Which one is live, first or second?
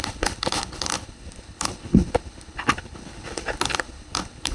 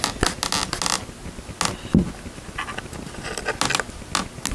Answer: second